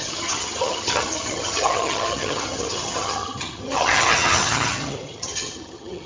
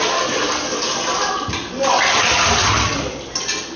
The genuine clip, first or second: second